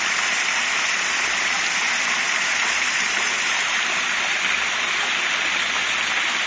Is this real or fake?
real